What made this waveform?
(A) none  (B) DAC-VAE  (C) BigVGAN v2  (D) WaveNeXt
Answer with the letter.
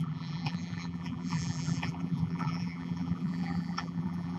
C